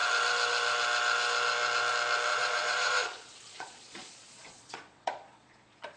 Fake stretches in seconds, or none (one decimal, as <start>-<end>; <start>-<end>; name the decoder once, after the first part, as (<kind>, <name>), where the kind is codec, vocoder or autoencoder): 2.3-6.0 (vocoder, Vocos)